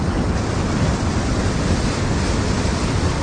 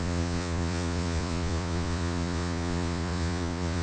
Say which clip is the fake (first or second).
second